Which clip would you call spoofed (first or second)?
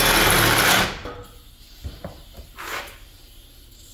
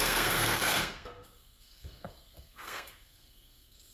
second